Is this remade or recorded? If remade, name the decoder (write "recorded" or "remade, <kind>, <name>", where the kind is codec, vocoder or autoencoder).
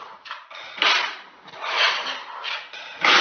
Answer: remade, vocoder, BigVGAN v2